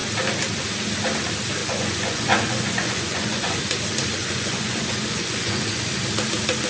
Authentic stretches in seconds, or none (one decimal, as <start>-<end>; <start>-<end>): 0.0-1.6; 3.6-4.2; 5.9-6.7

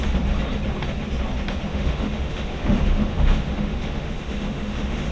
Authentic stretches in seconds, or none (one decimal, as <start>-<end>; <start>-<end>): 0.0-1.7

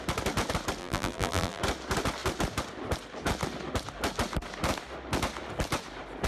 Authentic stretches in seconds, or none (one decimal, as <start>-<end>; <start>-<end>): 0.0-0.8; 1.6-6.3